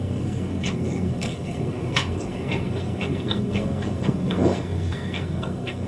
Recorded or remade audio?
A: remade